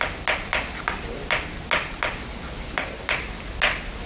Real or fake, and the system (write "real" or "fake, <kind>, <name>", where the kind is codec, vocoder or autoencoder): real